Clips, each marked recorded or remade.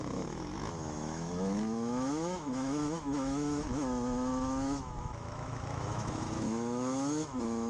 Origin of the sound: remade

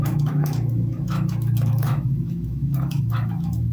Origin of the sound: remade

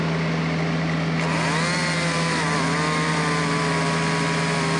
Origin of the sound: recorded